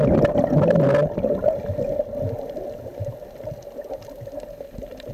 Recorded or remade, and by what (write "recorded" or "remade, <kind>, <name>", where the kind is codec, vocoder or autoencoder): recorded